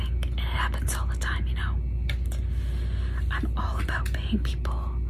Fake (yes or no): no